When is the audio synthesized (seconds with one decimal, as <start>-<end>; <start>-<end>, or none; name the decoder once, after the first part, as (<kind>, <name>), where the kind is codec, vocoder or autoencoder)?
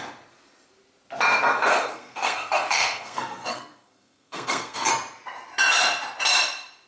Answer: 1.5-4.9 (codec, SNAC)